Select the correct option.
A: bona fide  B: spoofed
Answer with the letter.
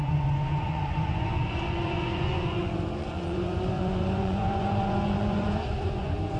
B